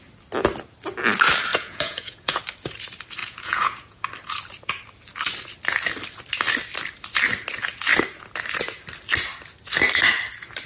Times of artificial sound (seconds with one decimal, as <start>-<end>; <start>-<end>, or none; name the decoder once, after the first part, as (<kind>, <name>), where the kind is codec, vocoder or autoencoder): 1.5-2.4 (vocoder, Vocos); 3.2-4.0